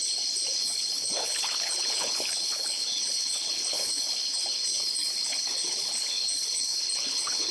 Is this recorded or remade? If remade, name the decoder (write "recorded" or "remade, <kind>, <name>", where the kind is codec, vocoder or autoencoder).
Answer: remade, codec, HILCodec